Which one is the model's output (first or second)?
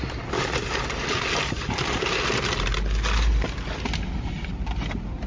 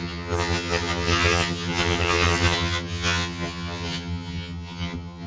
second